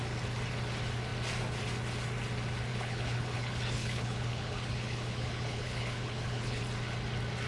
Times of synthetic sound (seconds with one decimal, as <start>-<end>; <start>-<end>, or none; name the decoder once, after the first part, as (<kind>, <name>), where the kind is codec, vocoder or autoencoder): 2.7-6.6 (codec, HILCodec)